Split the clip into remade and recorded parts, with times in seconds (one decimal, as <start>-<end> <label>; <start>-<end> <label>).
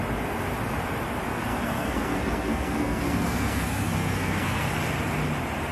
0.0-1.3 recorded; 1.3-4.7 remade; 4.7-5.7 recorded